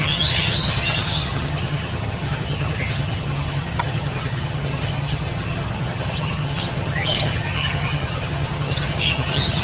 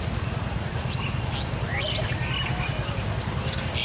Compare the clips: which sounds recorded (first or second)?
second